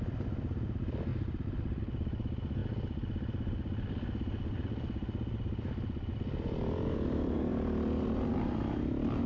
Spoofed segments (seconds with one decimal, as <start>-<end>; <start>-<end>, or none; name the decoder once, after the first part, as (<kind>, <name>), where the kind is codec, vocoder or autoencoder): 0.0-2.6 (vocoder, BigVGAN v2); 6.6-7.5; 8.3-9.3